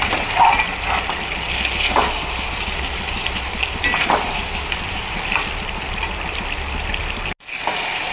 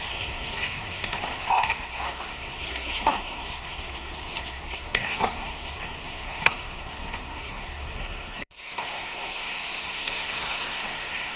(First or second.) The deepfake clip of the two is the second